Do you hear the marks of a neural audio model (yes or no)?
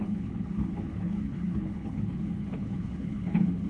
yes